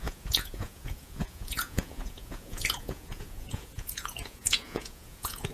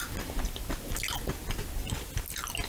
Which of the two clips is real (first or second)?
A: second